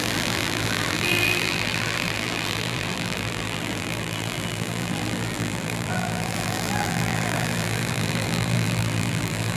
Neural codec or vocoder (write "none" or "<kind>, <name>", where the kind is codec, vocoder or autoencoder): vocoder, BigVGAN v2